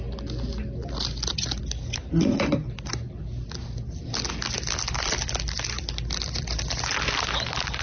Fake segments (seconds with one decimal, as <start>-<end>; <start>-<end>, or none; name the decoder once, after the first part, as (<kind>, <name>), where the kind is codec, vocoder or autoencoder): none